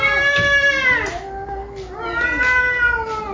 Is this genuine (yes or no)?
yes